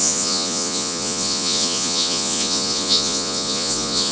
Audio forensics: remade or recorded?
remade